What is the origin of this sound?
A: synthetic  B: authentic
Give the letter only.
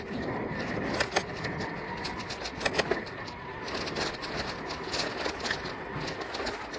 B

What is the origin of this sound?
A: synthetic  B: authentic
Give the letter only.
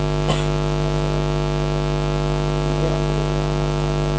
B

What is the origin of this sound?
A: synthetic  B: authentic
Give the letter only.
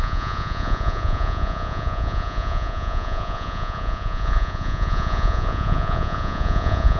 A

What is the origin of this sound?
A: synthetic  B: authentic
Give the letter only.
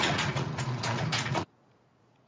A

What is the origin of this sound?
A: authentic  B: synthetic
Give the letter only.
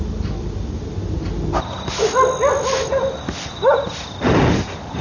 A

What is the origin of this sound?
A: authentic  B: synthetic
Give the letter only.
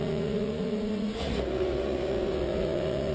B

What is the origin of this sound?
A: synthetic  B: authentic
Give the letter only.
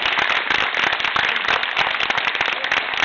B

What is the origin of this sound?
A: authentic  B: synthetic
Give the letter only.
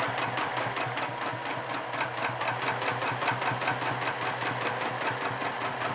A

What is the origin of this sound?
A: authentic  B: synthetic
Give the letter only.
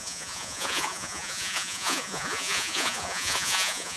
B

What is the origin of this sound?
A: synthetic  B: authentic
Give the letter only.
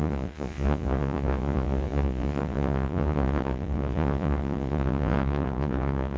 A